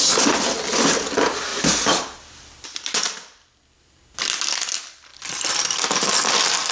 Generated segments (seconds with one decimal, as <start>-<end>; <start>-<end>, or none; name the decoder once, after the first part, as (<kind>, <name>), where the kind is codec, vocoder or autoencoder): 1.5-4.0 (vocoder, BigVGAN v2); 5.1-6.7